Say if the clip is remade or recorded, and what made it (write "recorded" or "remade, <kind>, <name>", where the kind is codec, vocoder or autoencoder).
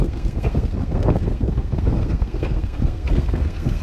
remade, codec, SNAC